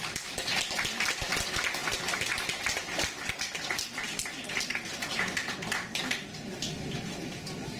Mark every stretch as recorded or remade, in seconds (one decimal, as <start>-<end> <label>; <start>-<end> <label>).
0.0-7.8 recorded